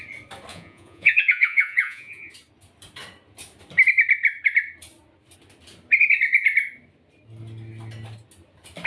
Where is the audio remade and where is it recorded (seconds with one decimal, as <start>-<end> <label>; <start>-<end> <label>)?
0.0-0.5 recorded; 0.5-2.3 remade; 2.3-8.9 recorded